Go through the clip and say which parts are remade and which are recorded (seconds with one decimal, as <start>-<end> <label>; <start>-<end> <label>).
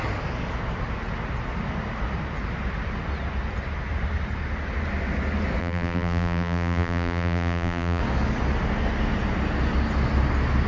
0.0-5.6 recorded; 5.6-8.0 remade; 8.0-10.7 recorded